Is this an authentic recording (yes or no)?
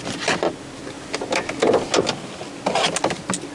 yes